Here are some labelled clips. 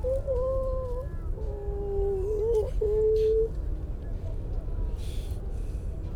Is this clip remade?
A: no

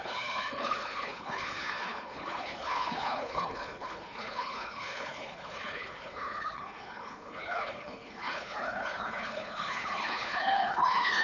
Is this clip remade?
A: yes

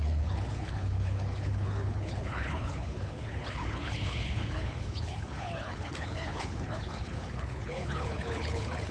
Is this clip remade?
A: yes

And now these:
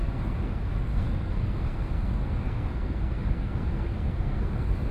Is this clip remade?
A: yes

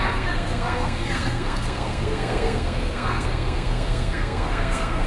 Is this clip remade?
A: yes